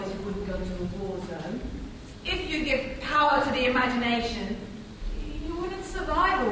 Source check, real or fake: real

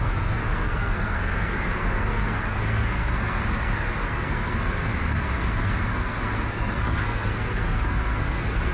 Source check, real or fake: fake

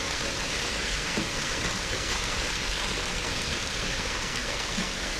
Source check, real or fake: fake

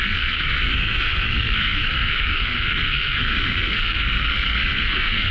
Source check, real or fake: fake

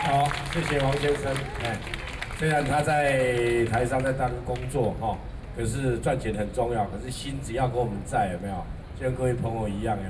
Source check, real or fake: real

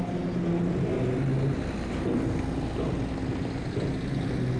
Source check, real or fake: real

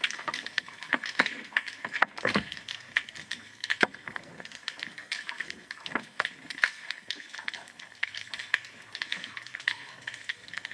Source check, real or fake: fake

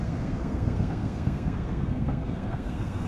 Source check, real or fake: fake